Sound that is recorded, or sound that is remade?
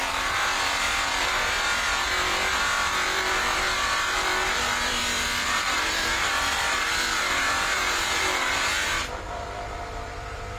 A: remade